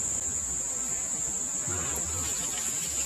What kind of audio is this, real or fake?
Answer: real